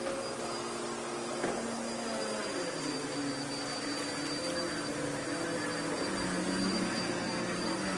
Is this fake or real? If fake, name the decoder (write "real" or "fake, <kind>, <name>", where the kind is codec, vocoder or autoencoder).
real